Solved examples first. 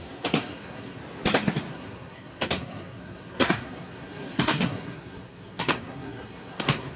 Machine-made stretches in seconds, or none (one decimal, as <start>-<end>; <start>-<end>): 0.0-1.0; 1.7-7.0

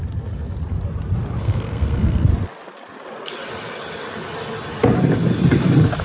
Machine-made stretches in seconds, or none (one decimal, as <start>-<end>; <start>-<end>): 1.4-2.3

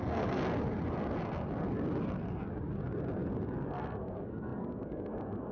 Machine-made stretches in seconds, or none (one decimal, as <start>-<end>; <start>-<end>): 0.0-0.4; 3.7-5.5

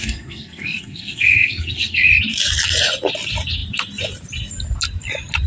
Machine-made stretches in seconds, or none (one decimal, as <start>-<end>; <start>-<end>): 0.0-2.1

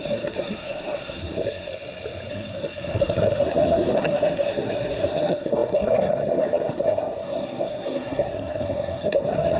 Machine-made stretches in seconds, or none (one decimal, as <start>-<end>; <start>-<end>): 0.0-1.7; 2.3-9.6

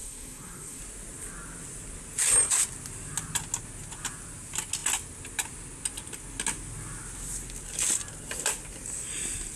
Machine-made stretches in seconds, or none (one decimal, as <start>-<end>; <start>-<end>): 0.0-0.8

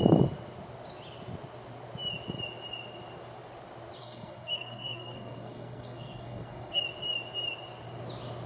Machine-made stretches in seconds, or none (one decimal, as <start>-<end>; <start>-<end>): 4.0-6.8